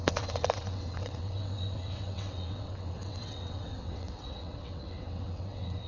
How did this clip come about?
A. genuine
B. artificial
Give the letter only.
B